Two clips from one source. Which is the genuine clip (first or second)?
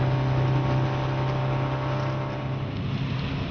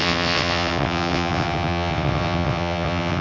first